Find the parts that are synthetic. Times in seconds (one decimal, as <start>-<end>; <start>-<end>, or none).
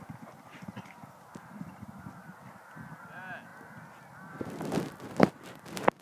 1.0-2.0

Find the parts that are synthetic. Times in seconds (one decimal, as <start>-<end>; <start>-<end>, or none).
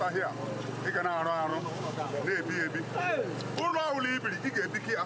1.5-2.2